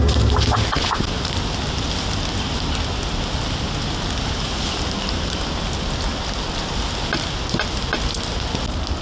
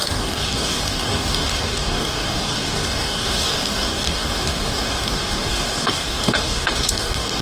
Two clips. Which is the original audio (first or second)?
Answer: first